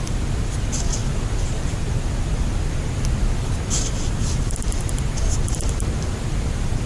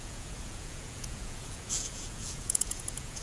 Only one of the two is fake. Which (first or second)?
second